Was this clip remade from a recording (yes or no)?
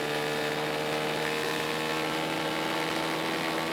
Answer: no